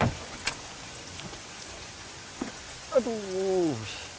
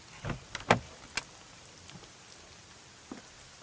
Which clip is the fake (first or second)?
first